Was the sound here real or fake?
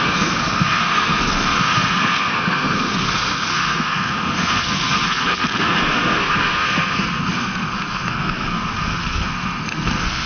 fake